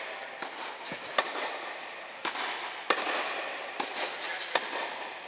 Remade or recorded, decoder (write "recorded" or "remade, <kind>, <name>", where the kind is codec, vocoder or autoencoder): recorded